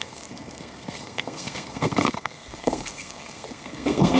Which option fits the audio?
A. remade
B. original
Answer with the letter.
A